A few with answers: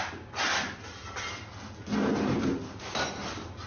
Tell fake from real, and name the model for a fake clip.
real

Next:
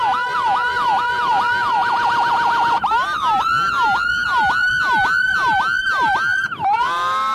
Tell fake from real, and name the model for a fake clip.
real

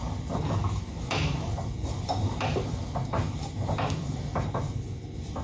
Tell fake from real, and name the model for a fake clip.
real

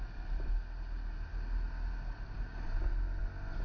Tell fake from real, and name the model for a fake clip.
real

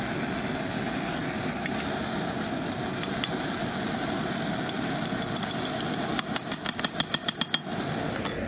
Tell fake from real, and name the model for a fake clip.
real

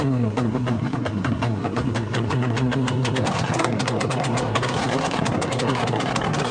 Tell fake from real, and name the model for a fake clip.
fake, codec, SNAC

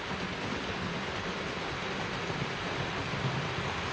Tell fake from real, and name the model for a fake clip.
real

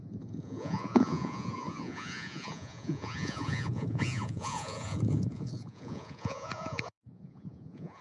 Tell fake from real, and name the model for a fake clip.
fake, vocoder, Vocos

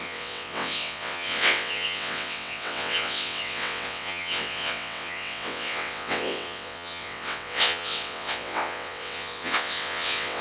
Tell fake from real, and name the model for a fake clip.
fake, vocoder, WaveNeXt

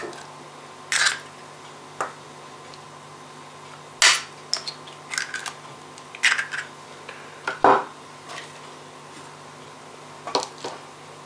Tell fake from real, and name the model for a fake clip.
real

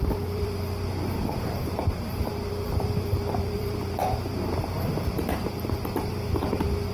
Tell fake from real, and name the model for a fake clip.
fake, vocoder, BigVGAN v2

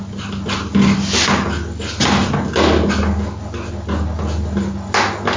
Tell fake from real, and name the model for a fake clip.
real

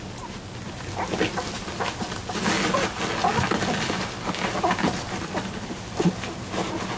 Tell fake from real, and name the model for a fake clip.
real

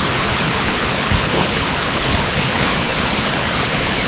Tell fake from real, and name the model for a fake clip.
fake, codec, HILCodec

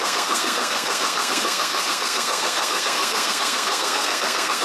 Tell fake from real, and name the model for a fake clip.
fake, codec, SNAC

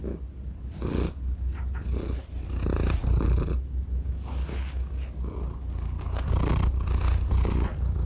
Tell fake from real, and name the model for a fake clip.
real